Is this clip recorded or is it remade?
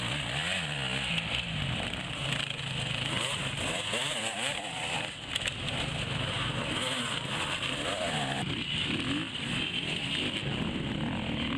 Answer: recorded